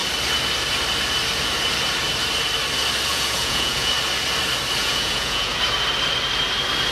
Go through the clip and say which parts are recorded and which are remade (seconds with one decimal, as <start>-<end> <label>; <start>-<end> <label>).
0.0-3.1 recorded; 3.1-3.9 remade; 3.9-4.8 recorded; 4.8-5.5 remade; 5.5-6.9 recorded